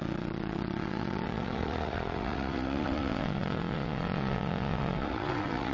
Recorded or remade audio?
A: remade